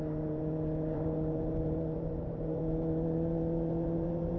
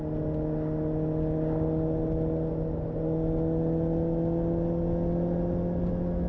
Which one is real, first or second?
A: second